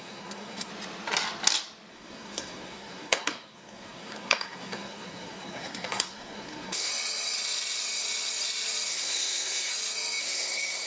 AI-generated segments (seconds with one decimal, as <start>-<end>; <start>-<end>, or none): 0.0-0.7; 1.9-6.9; 8.9-9.7; 10.2-10.9